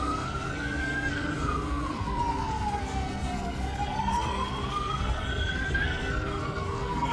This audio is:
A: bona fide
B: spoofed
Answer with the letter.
B